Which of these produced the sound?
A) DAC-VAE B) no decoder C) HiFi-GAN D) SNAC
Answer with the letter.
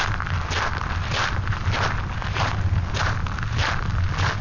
B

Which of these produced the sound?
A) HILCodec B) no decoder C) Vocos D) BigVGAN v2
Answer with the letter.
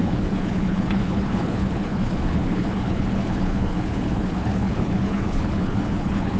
A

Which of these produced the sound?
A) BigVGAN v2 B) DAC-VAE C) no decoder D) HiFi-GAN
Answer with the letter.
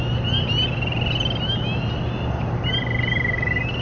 C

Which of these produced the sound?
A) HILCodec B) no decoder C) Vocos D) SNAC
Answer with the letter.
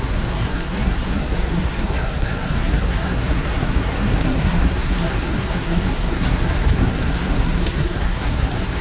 D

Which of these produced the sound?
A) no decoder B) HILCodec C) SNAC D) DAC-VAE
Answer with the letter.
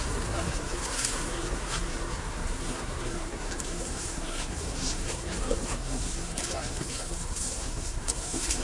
C